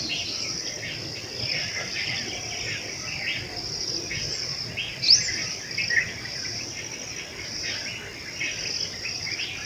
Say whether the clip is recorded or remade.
recorded